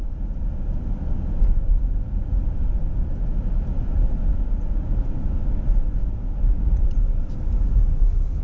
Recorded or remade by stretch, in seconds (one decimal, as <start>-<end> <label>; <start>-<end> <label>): 0.0-6.0 recorded; 6.0-8.4 remade